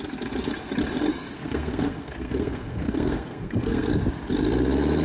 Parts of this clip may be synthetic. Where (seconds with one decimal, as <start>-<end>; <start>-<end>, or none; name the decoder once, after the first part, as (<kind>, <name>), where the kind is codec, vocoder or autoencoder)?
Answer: 1.1-3.9 (codec, SNAC)